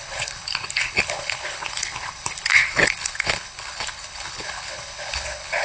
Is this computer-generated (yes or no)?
yes